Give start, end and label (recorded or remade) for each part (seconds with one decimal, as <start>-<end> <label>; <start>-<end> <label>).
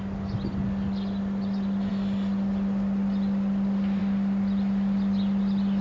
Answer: 0.0-5.8 recorded